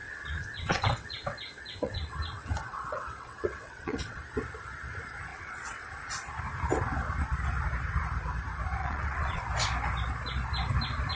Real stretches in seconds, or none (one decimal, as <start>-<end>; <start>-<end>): 4.2-5.3; 5.9-8.8; 9.4-11.1